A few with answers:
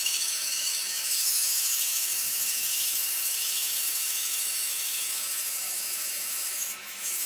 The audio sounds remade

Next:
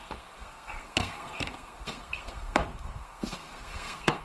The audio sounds remade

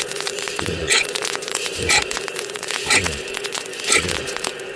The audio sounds remade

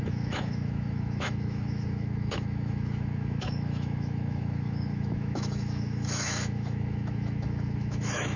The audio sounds remade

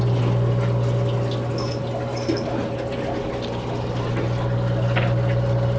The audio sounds recorded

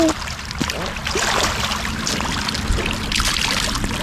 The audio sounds recorded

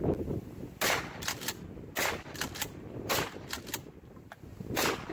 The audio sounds recorded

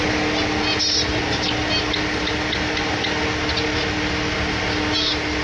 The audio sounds recorded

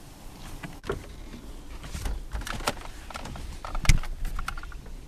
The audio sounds recorded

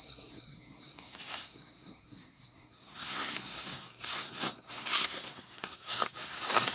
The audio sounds remade